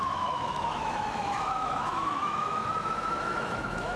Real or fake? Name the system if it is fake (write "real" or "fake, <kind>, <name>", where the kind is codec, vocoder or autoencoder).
fake, autoencoder, DAC-VAE